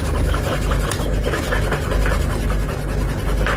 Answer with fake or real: real